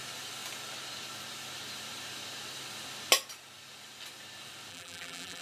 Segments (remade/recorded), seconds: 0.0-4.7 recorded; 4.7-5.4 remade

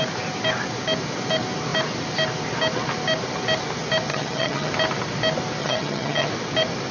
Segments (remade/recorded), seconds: 0.0-4.1 recorded; 4.1-4.7 remade; 4.7-5.6 recorded; 5.6-6.3 remade; 6.3-6.9 recorded

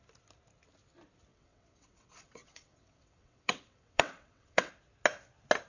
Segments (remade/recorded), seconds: 0.0-1.3 recorded; 1.3-4.7 remade; 4.7-5.7 recorded

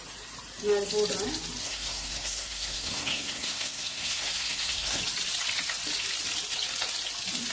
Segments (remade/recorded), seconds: 0.0-1.6 recorded; 1.6-5.0 remade; 5.0-7.5 recorded

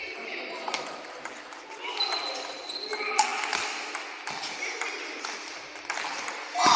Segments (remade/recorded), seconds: 0.0-6.8 recorded